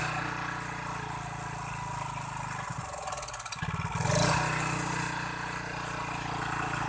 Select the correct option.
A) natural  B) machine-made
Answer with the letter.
A